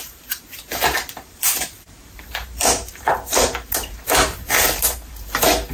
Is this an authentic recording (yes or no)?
no